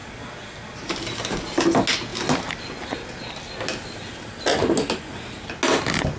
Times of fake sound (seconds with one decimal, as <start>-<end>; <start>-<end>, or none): none